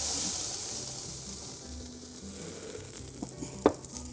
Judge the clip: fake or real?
real